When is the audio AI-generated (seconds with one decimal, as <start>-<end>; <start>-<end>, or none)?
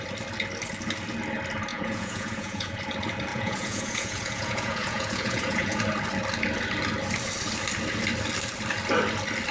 1.7-2.8; 3.3-5.8